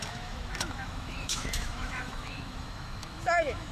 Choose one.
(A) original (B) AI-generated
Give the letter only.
B